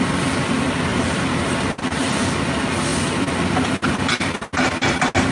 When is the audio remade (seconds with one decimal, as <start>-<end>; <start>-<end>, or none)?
0.9-1.5